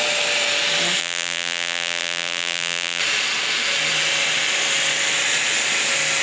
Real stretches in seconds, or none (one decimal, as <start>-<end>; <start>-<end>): 0.0-1.0; 3.0-6.2